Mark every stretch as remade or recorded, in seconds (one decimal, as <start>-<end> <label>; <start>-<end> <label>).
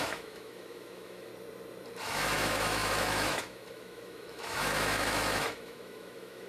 0.0-1.3 remade; 1.3-2.0 recorded; 2.0-6.5 remade